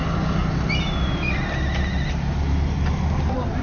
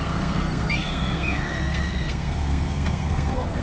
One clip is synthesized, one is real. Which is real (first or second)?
first